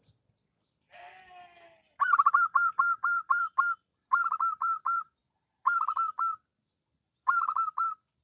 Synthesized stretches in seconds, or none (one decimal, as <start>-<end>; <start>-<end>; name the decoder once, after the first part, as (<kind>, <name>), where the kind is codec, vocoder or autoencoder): 0.0-5.2 (vocoder, BigVGAN v2); 6.6-8.2